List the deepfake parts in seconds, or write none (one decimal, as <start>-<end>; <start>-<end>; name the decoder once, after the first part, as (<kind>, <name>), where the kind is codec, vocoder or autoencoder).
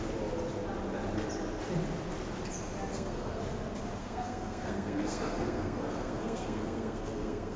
2.9-3.4 (codec, SNAC); 4.0-7.6